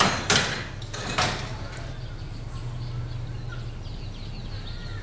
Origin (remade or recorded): recorded